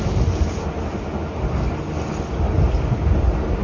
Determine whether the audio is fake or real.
real